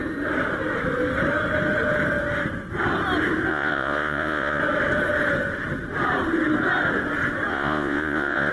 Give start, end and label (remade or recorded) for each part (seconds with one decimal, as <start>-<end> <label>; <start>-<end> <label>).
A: 0.0-3.5 recorded; 3.5-4.6 remade; 4.6-7.5 recorded; 7.5-8.5 remade